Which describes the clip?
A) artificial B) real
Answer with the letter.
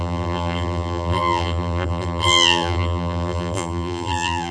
A